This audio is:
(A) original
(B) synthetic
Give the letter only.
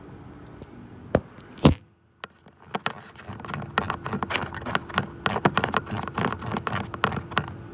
A